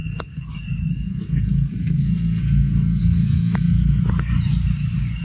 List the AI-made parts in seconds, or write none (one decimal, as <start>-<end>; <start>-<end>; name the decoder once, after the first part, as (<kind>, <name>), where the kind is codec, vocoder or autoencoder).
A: 0.0-0.5 (codec, SNAC); 0.9-4.0